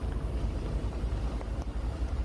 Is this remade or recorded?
remade